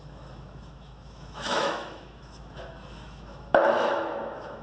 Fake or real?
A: fake